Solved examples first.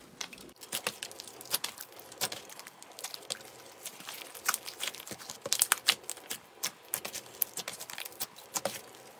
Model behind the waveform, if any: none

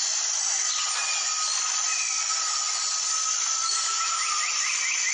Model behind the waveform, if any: none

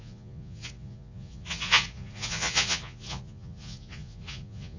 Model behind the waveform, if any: vocoder, Vocos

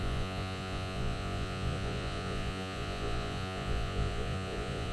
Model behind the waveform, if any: vocoder, Vocos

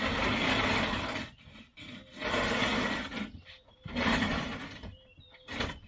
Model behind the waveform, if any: none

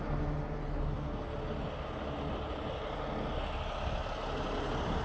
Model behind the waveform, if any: none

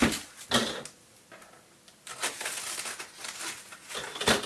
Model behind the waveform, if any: none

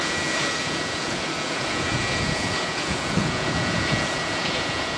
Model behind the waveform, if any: vocoder, Vocos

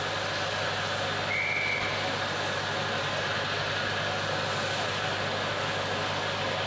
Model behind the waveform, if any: none